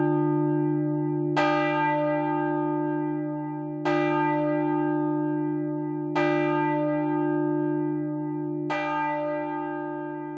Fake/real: real